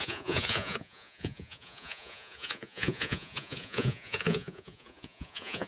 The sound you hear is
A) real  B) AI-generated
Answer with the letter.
B